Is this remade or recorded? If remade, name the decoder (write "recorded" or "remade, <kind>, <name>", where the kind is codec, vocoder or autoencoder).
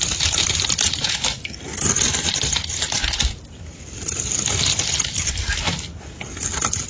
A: recorded